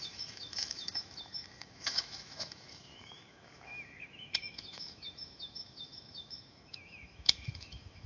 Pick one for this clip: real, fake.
fake